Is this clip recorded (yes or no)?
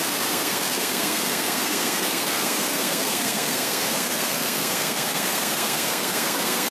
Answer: no